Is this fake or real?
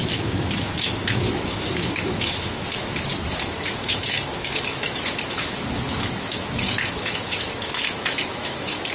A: fake